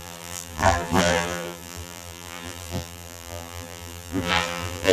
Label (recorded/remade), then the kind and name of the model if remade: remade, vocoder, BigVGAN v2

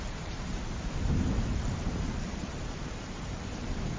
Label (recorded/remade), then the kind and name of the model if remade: remade, vocoder, BigVGAN v2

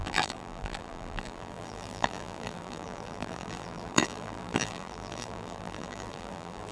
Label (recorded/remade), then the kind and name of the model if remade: remade, vocoder, BigVGAN v2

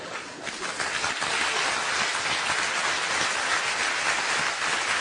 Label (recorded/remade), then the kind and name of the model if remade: recorded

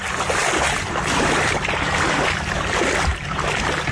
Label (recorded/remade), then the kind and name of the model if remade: recorded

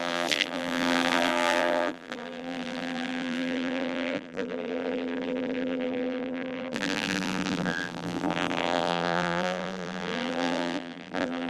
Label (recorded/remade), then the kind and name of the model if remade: remade, vocoder, BigVGAN v2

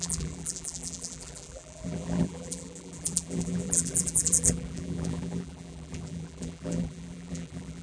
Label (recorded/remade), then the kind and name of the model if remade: remade, vocoder, BigVGAN v2